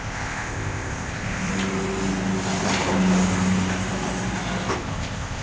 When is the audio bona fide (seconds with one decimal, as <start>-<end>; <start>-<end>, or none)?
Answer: 1.5-4.7